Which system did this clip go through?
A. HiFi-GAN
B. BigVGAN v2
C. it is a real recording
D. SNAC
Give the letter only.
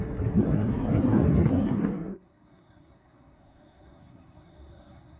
D